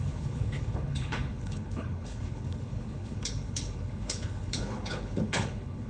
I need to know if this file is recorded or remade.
remade